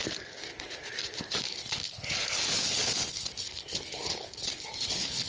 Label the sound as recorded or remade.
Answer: remade